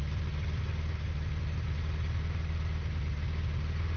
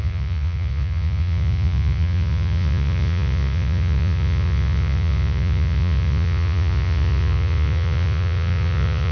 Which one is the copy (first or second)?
second